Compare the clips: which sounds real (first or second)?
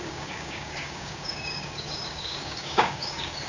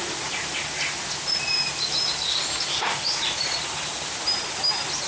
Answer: second